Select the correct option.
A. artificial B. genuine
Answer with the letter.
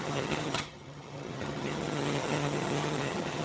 A